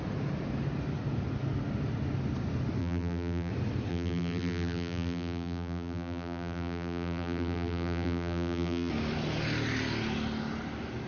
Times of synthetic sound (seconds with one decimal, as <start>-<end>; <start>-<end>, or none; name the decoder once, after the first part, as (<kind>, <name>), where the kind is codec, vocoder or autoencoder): 2.8-3.5 (vocoder, BigVGAN v2); 3.9-8.9